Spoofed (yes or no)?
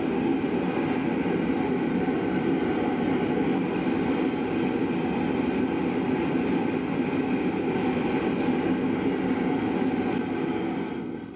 no